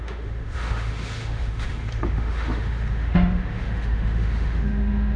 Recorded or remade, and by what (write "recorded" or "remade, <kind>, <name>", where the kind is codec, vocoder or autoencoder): remade, autoencoder, DAC-VAE